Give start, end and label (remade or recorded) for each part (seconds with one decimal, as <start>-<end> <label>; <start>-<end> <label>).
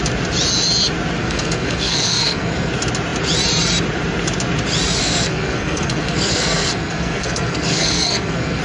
0.0-1.2 recorded; 1.2-2.7 remade; 2.7-5.0 recorded; 5.0-8.6 remade